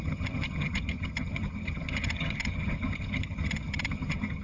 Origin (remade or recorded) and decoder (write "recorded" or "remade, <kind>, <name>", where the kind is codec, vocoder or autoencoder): remade, vocoder, HiFi-GAN